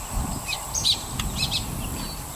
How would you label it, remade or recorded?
recorded